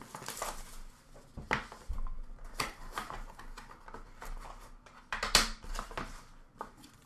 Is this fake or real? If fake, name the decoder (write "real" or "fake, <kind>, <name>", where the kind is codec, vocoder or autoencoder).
real